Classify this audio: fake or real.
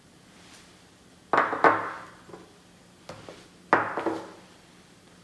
real